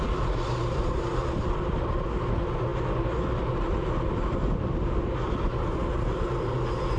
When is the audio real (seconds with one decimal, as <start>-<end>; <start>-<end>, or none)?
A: 0.0-7.0